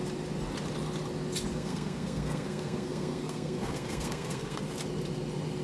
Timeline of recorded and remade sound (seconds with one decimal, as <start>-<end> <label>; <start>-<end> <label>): 0.0-1.5 recorded; 1.5-4.6 remade; 4.6-5.6 recorded